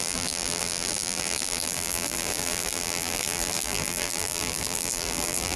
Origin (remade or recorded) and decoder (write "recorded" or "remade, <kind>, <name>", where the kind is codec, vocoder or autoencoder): remade, vocoder, BigVGAN v2